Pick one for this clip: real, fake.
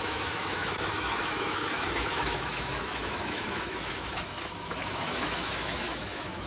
fake